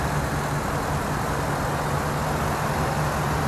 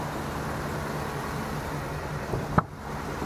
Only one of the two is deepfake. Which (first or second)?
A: second